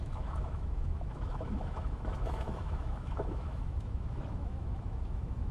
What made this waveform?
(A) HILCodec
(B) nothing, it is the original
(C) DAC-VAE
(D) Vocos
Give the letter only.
C